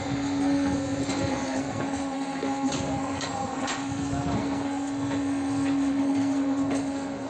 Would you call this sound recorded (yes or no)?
no